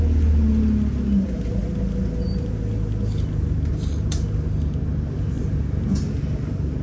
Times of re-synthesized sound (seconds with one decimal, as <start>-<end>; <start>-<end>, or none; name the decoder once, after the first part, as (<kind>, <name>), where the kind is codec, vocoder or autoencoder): none